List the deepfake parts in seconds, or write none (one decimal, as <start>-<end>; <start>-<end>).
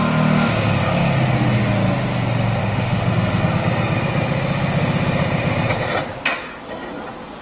2.6-3.4